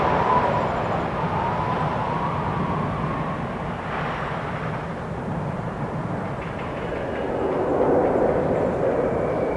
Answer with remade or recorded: recorded